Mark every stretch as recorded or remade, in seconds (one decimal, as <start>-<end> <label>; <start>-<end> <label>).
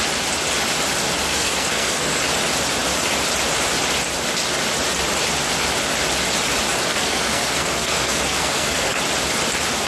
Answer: 0.0-1.2 recorded; 1.2-2.2 remade; 2.2-6.9 recorded; 6.9-9.0 remade; 9.0-9.9 recorded